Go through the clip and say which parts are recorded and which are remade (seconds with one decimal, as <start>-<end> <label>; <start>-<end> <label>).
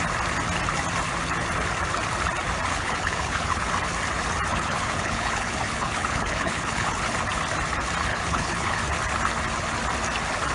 0.0-2.7 recorded; 2.7-3.7 remade; 3.7-4.5 recorded; 4.5-7.0 remade; 7.0-8.1 recorded; 8.1-8.8 remade; 8.8-10.5 recorded